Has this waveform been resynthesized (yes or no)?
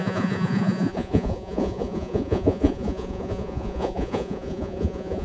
yes